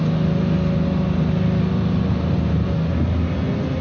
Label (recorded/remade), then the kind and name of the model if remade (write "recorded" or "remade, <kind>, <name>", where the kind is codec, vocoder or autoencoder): recorded